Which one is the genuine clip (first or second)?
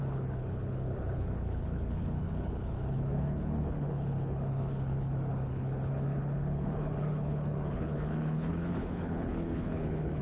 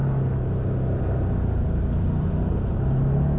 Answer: second